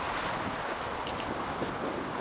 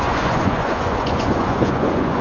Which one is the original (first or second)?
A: first